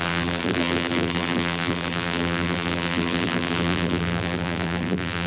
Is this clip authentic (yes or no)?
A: no